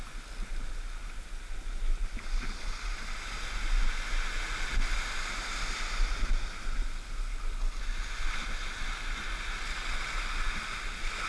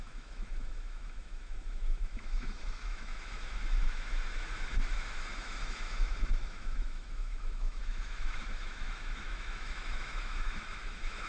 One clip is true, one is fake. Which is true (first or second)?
first